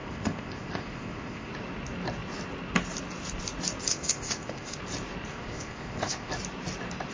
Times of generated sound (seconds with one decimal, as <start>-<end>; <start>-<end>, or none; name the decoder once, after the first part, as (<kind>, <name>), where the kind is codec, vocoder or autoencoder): 0.0-1.5 (codec, ZipCodec); 3.9-4.8; 5.3-6.3